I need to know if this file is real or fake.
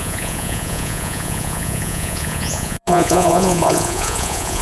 fake